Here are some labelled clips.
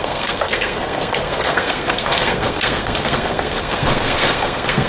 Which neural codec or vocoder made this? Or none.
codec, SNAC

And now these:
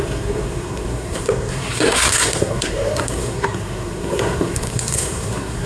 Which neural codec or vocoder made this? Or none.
codec, SNAC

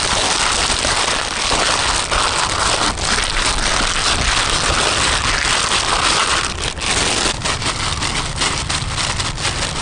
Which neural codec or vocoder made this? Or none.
none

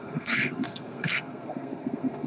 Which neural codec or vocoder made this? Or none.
codec, SNAC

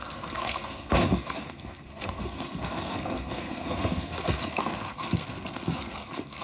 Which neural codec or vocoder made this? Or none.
codec, SNAC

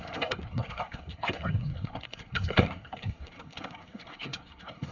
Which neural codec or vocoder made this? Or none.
codec, SNAC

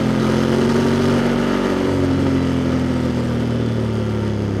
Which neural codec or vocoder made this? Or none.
none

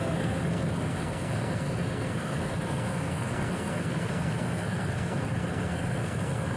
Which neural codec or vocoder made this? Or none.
codec, SNAC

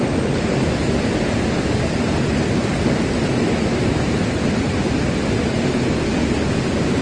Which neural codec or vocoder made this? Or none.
none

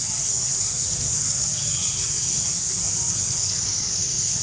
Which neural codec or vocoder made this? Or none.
codec, SNAC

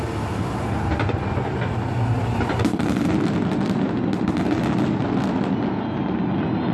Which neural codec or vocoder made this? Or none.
none